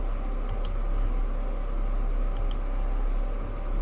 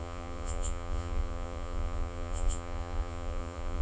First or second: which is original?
first